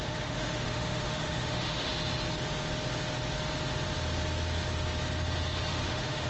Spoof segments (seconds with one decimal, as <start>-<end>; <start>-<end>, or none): 0.0-1.9; 5.7-6.3